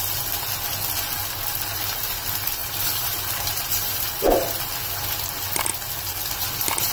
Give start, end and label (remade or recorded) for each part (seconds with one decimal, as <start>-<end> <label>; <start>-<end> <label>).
0.0-2.6 recorded; 2.6-5.3 remade; 5.3-5.7 recorded; 5.7-6.3 remade; 6.3-6.9 recorded